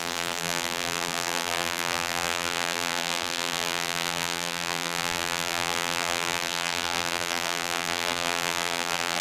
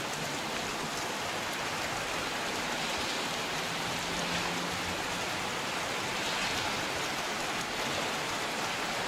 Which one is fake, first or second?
first